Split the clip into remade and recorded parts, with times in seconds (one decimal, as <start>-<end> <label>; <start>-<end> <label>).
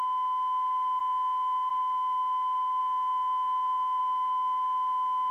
0.0-1.0 remade; 1.0-1.7 recorded; 1.7-2.8 remade; 2.8-4.0 recorded; 4.0-5.3 remade